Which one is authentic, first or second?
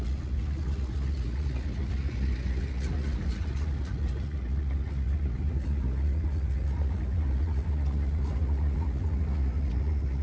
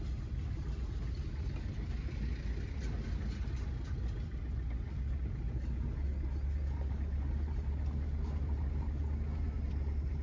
second